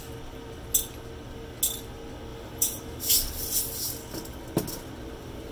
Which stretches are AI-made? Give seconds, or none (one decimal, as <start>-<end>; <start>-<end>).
2.3-3.0